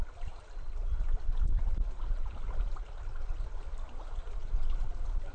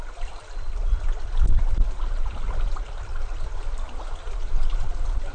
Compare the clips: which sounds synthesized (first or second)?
first